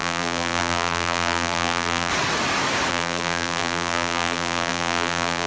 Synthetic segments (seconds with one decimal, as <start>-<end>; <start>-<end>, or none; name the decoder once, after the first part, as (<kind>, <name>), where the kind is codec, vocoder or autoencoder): 0.0-2.1 (vocoder, BigVGAN v2); 2.9-5.5